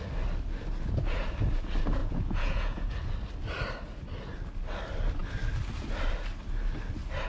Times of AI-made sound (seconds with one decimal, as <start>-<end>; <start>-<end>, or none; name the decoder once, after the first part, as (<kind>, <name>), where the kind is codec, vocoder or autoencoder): 2.0-2.9 (vocoder, Vocos)